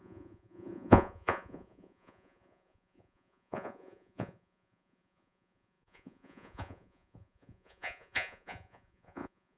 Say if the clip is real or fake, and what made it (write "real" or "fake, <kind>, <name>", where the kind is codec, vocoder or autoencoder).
fake, vocoder, Vocos